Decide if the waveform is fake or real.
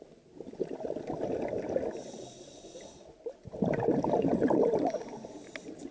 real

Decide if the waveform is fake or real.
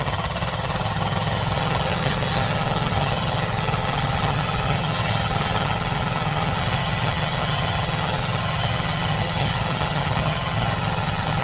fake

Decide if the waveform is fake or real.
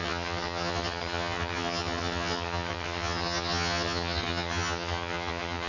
fake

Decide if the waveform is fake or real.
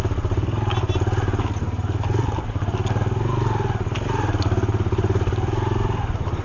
real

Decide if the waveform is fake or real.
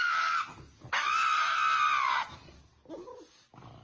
real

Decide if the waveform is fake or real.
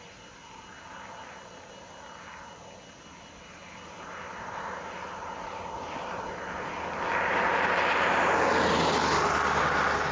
real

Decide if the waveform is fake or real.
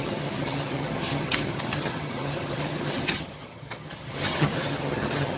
fake